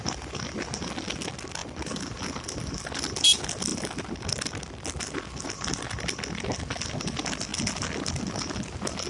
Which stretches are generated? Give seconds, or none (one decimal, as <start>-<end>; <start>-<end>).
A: none